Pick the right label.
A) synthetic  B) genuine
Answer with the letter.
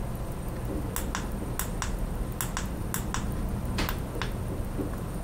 B